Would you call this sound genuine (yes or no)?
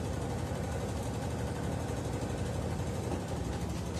yes